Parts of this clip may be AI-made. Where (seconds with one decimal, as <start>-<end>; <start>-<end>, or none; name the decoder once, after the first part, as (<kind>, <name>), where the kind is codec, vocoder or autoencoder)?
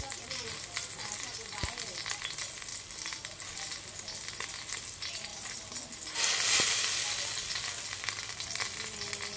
none